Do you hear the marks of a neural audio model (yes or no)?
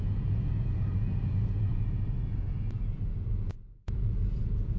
yes